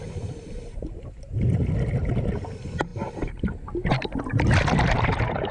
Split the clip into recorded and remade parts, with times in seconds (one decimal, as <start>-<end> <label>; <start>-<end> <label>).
0.0-5.5 recorded